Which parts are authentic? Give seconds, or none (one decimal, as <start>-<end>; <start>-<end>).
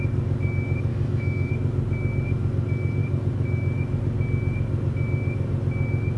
0.0-0.9; 1.5-6.2